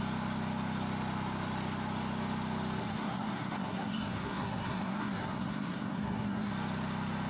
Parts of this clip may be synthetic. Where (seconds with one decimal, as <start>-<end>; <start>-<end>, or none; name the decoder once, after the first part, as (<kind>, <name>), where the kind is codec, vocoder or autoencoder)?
2.8-6.5 (codec, SNAC)